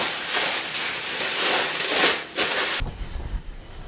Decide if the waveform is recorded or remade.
recorded